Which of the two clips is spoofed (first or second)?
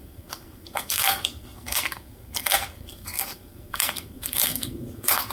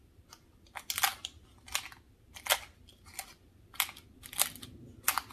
first